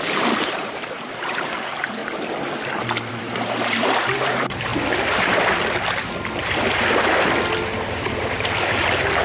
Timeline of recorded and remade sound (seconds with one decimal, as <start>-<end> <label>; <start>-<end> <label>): 0.0-2.0 remade; 2.0-3.1 recorded; 3.1-4.7 remade; 4.7-7.9 recorded; 7.9-9.2 remade